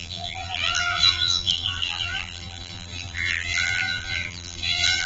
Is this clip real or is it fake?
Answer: fake